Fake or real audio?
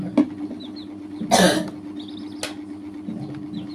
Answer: real